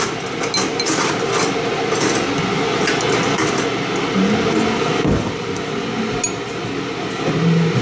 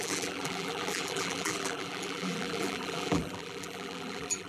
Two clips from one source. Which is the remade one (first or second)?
second